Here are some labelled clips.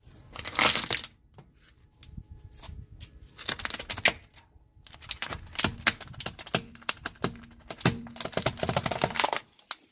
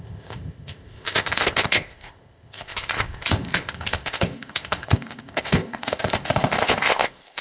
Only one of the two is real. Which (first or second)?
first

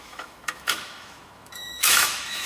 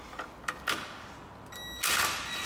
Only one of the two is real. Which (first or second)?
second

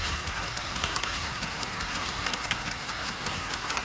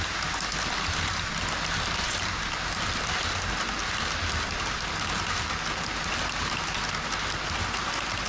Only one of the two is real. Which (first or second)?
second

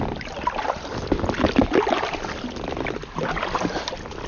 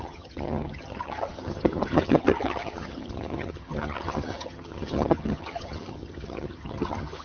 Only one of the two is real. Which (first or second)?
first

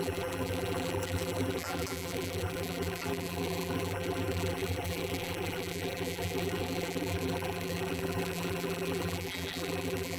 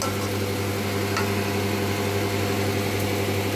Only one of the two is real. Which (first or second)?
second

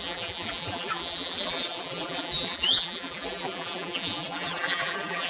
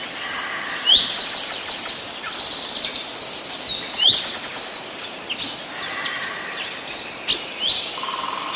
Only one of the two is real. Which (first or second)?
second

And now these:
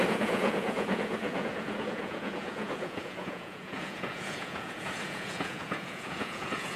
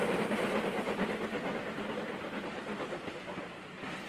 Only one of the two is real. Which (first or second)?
second